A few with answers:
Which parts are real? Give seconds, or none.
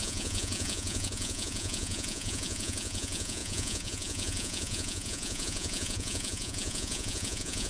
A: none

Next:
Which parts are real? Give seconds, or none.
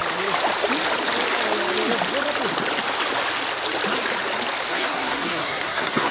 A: 0.0-4.7